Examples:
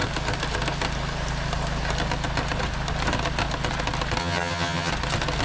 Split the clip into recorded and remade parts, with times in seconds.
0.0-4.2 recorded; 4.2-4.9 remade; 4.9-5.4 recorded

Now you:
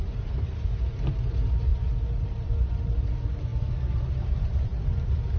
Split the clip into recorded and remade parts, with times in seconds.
0.0-1.7 remade; 1.7-2.2 recorded; 2.2-5.4 remade